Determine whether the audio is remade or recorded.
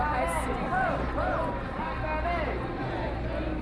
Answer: recorded